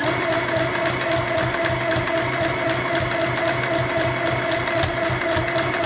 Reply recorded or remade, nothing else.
recorded